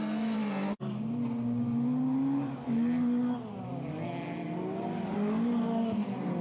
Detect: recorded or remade recorded